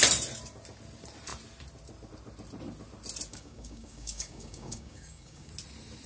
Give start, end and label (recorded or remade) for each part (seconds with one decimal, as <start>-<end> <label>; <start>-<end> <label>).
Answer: 0.0-3.3 recorded; 3.3-5.5 remade; 5.5-6.1 recorded